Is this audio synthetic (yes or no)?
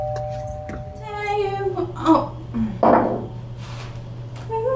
no